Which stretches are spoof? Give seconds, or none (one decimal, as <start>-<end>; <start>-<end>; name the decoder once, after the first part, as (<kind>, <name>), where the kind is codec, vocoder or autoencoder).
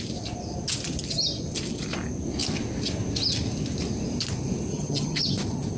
4.7-5.2 (vocoder, HiFi-GAN)